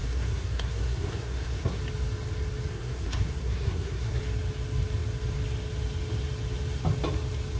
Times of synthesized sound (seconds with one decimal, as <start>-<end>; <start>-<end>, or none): 0.0-1.8; 2.7-4.2